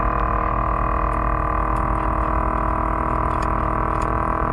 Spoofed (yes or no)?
no